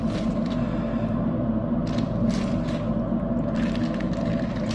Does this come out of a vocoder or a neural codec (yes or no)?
no